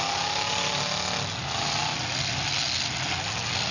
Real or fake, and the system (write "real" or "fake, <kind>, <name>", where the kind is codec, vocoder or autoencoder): real